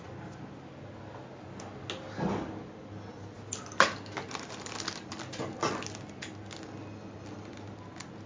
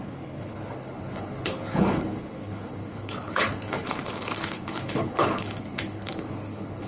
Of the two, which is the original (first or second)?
first